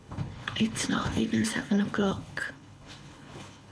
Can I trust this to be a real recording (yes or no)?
no